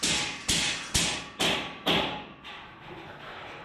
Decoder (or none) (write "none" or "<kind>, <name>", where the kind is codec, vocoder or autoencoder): none